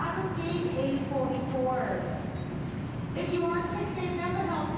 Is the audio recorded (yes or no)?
yes